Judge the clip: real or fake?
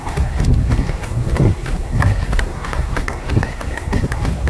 fake